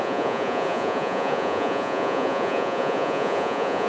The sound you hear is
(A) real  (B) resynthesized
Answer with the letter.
B